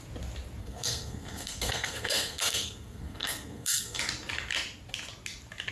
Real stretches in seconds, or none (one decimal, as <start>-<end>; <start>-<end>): 0.0-0.6; 4.0-5.7